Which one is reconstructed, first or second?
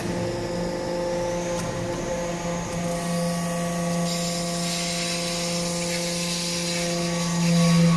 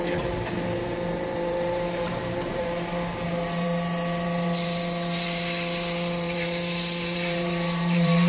second